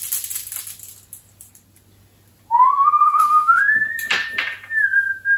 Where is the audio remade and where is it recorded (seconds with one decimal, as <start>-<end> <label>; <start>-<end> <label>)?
0.0-3.0 recorded; 3.0-3.6 remade; 3.6-5.4 recorded